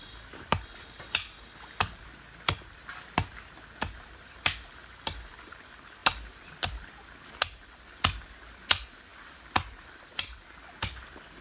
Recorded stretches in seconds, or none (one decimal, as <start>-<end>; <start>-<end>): 0.0-11.4